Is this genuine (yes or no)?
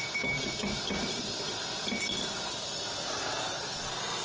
yes